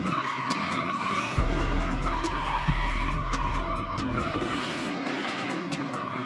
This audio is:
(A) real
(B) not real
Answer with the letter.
B